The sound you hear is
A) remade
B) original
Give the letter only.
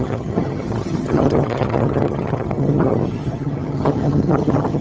A